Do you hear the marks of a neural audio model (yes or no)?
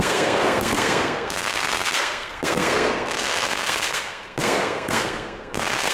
yes